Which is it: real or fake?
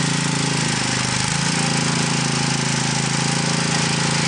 real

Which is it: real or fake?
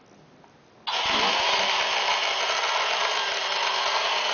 real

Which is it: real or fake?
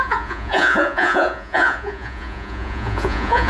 fake